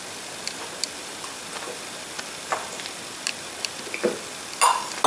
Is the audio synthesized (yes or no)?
no